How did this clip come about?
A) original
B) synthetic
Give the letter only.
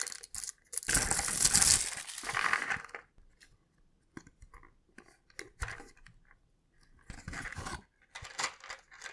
A